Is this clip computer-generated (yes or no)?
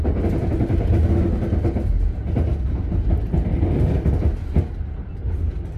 no